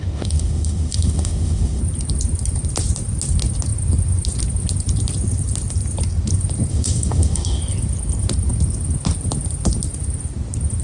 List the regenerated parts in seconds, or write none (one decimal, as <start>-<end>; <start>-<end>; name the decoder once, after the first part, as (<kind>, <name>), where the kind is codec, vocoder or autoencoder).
0.0-1.8 (autoencoder, DAC-VAE); 6.7-7.6